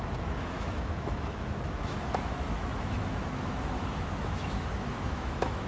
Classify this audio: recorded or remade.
remade